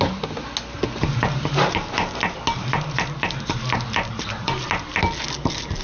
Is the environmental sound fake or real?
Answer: real